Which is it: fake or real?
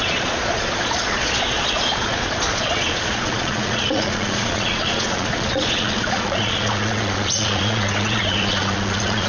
fake